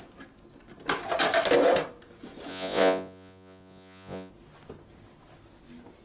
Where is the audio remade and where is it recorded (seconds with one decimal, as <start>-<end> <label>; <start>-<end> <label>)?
0.0-2.5 recorded; 2.5-4.3 remade; 4.3-6.0 recorded